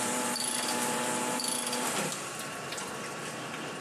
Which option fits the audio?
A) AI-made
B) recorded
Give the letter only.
A